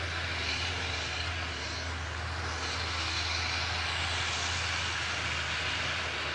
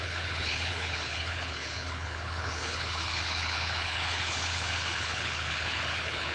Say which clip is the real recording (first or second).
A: first